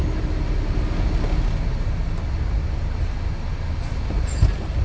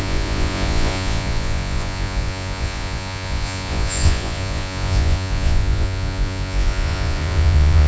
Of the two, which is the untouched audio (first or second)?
first